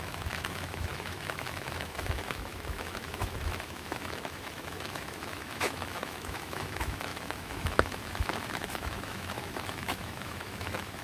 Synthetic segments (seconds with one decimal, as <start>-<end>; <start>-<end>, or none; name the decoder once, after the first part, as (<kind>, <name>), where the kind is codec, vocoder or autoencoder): 0.0-11.0 (autoencoder, DAC-VAE)